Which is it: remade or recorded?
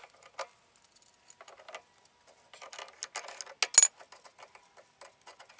recorded